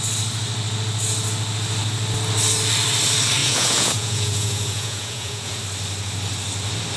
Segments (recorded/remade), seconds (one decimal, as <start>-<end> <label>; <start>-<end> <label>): 0.0-3.4 recorded; 3.4-5.6 remade; 5.6-7.0 recorded